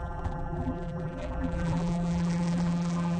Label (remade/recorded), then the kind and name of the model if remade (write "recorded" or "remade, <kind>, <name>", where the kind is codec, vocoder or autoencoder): remade, vocoder, BigVGAN v2